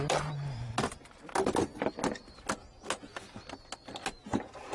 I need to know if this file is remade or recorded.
recorded